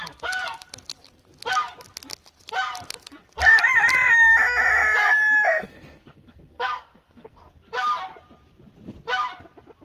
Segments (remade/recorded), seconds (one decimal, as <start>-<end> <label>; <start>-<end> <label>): 0.0-5.5 recorded; 5.5-7.4 remade; 7.4-9.8 recorded